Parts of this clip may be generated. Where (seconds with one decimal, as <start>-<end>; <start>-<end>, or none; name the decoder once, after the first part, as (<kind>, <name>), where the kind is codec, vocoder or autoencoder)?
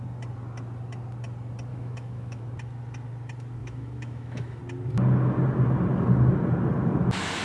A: 1.7-2.4 (autoencoder, DAC-VAE); 3.6-4.6